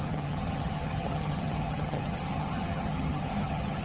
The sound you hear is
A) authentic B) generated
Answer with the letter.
B